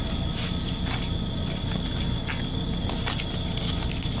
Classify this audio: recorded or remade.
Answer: recorded